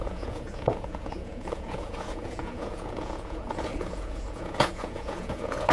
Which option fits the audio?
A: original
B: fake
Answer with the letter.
B